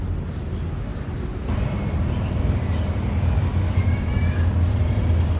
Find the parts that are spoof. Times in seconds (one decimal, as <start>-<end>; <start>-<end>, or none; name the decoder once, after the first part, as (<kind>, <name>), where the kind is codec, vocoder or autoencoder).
none